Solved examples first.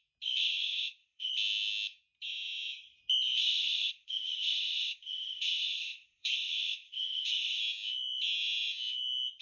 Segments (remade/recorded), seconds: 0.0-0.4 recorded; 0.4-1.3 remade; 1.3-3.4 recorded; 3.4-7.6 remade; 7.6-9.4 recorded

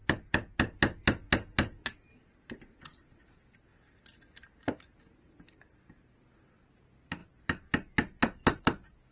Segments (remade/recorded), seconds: 0.0-9.1 recorded

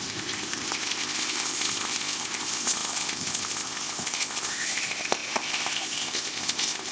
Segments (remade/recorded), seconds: 0.0-6.9 remade

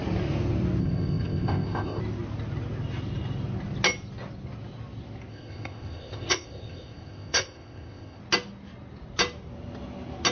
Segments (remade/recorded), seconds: 0.0-0.8 recorded; 0.8-2.0 remade; 2.0-5.3 recorded; 5.3-8.2 remade; 8.2-10.3 recorded

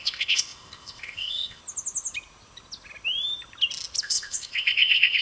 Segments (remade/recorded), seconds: 0.0-1.6 remade; 1.6-4.0 recorded; 4.0-5.2 remade